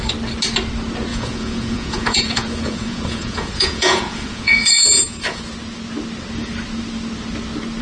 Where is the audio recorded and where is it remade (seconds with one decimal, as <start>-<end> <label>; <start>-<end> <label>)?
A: 0.0-1.1 recorded; 1.1-5.4 remade; 5.4-7.8 recorded